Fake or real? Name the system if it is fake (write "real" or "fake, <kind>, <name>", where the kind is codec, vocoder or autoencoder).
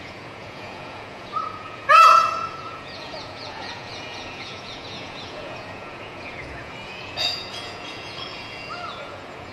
fake, vocoder, Vocos